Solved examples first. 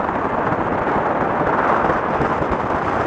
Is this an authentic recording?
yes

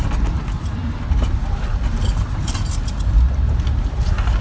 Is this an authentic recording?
yes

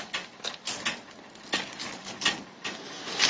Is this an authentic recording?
yes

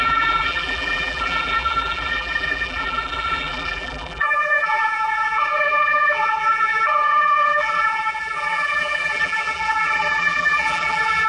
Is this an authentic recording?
no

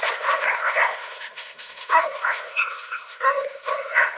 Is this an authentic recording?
no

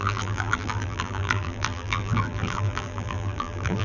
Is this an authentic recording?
no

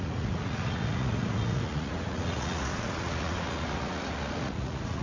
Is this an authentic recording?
no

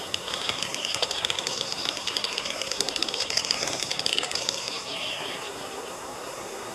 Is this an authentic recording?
no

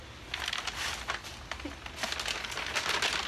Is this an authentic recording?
yes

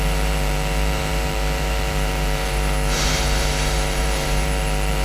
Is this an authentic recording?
no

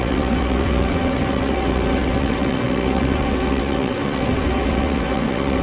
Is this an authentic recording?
no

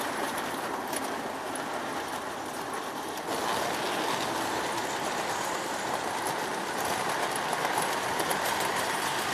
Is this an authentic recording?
yes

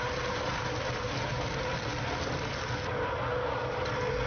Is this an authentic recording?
yes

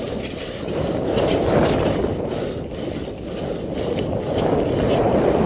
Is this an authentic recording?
yes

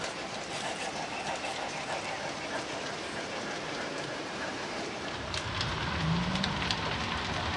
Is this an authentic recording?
no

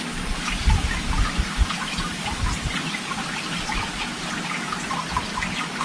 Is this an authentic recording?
yes